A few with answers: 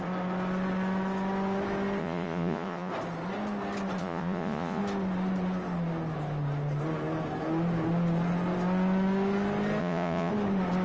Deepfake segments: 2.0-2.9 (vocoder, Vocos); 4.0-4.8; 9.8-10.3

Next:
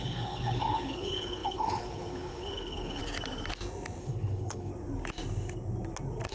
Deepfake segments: 0.0-3.0 (codec, HILCodec); 4.0-4.7

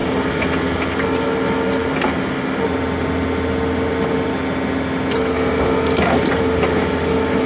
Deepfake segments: none

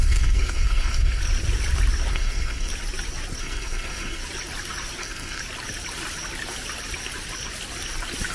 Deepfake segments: 0.0-1.2 (codec, SNAC); 2.1-2.7; 3.4-4.2; 5.0-5.4